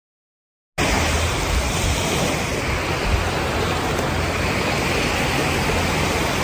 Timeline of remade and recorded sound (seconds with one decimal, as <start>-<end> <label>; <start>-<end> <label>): 0.0-6.4 recorded